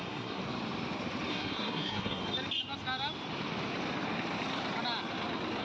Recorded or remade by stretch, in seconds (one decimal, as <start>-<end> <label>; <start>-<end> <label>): 0.0-0.4 remade; 0.4-1.3 recorded; 1.3-2.2 remade; 2.2-5.6 recorded